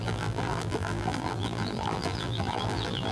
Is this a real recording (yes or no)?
no